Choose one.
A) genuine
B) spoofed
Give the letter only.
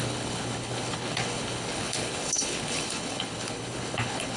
B